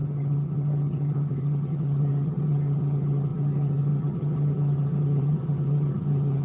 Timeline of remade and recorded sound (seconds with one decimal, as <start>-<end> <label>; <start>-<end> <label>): 0.0-6.4 remade